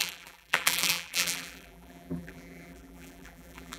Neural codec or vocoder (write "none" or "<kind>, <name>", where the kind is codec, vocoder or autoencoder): vocoder, BigVGAN v2